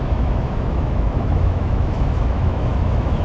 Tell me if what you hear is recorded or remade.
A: remade